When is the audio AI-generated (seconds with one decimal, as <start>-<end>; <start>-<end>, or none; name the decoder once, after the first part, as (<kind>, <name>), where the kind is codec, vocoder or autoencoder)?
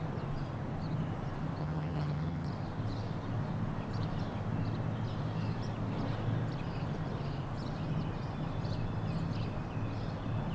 1.6-2.5 (vocoder, HiFi-GAN)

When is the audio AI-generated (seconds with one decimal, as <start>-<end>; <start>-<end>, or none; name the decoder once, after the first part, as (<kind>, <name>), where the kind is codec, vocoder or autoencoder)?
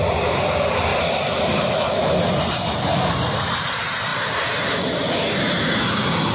none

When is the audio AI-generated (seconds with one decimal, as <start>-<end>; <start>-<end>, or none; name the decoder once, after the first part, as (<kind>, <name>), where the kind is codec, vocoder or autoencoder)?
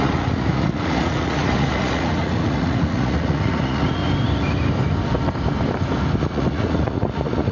0.0-4.0 (vocoder, Vocos); 6.2-7.5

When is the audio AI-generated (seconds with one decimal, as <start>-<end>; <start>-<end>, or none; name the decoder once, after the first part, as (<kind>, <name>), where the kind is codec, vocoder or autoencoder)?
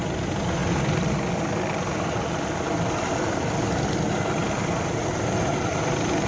none